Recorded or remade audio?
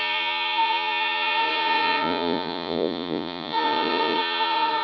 remade